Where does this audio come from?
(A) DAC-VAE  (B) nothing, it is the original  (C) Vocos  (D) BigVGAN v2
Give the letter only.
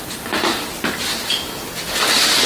B